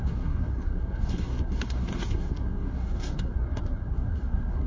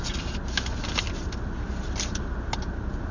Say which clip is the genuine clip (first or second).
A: second